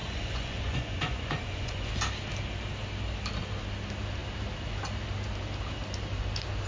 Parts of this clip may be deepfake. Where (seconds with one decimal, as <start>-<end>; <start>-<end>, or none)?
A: 0.0-1.9